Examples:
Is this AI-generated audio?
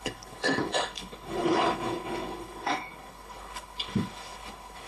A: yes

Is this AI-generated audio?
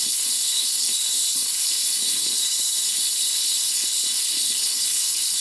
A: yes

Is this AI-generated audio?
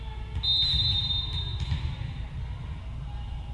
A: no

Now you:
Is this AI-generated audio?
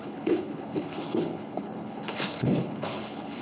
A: yes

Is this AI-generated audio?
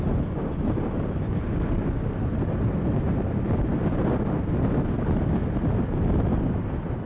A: no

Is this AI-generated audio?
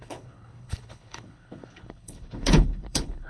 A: yes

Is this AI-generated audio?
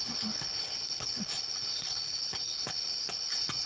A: yes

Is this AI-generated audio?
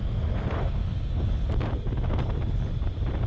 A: no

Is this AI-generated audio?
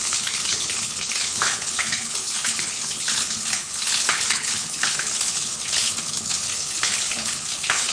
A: yes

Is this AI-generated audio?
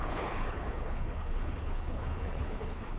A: yes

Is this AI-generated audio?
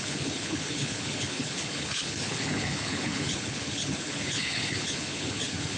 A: yes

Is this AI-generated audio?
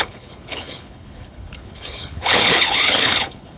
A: yes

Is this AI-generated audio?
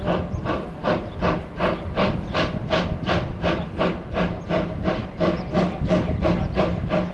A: no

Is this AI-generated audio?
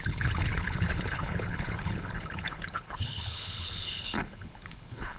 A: yes